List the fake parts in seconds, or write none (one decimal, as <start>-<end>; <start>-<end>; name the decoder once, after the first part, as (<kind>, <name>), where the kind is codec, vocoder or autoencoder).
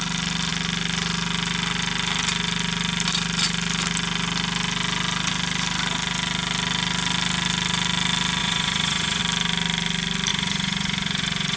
8.4-9.2 (vocoder, Vocos); 10.3-11.6